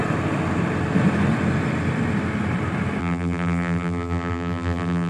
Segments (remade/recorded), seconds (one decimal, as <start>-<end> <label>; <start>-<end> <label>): 0.0-3.0 recorded; 3.0-5.1 remade